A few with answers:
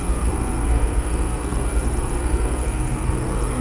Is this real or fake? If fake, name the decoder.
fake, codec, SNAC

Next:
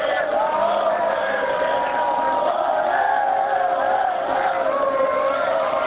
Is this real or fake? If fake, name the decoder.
real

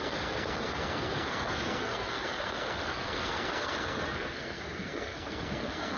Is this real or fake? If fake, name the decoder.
fake, codec, SNAC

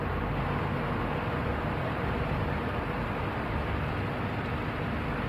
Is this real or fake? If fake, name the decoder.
real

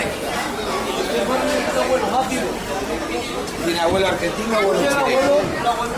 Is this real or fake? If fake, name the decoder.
real